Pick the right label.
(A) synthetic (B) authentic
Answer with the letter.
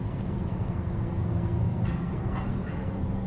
A